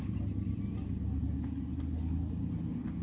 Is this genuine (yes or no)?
yes